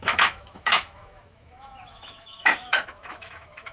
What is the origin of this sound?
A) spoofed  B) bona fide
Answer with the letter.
A